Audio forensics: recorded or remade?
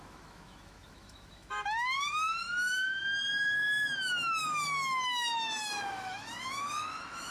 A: remade